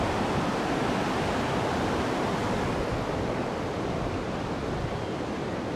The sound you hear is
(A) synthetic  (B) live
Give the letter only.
B